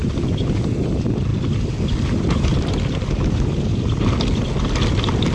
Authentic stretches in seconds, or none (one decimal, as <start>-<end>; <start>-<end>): 0.0-5.3